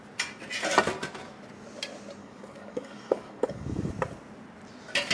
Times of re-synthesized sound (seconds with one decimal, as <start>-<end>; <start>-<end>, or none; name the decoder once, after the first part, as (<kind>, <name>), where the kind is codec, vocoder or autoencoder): 2.2-3.9 (codec, DAC)